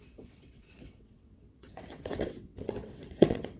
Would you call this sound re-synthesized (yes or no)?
yes